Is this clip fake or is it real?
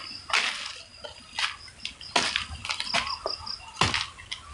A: real